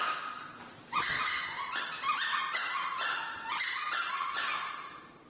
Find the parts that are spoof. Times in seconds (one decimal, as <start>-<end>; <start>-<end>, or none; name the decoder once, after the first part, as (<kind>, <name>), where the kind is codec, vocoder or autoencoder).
0.8-1.3 (vocoder, BigVGAN v2); 2.9-5.3